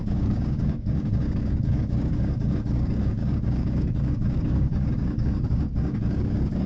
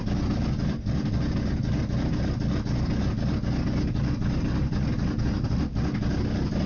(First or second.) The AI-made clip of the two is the first